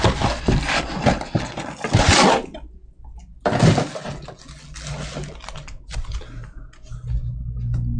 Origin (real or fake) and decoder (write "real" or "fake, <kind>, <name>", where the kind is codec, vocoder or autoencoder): real